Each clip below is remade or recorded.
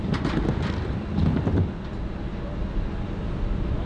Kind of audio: recorded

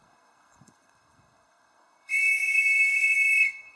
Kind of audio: remade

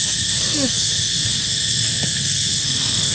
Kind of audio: remade